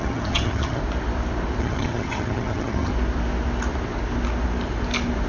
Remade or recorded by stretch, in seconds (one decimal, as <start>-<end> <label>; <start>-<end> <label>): 0.0-0.8 remade; 0.8-1.6 recorded; 1.6-2.9 remade; 2.9-5.3 recorded